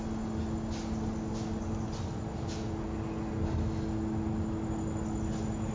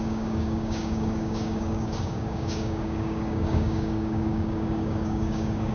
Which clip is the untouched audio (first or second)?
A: first